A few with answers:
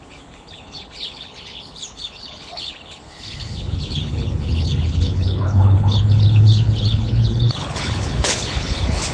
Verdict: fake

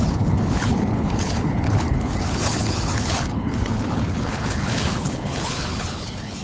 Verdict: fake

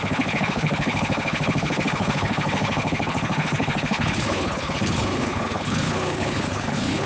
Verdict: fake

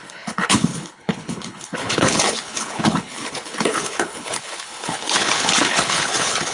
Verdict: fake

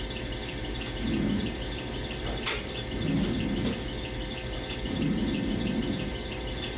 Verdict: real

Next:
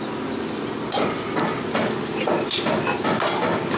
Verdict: real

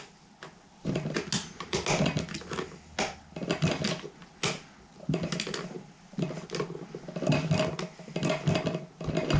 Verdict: real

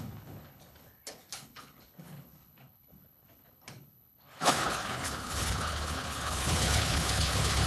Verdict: fake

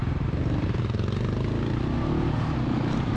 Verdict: real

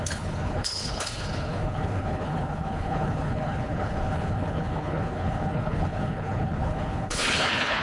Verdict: fake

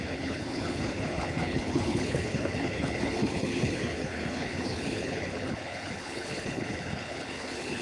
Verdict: fake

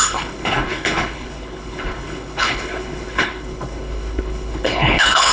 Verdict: fake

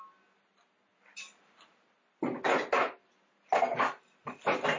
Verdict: real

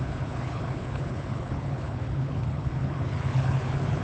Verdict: fake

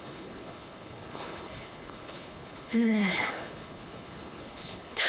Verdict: fake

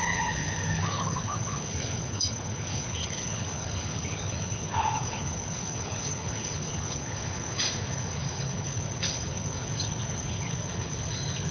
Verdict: fake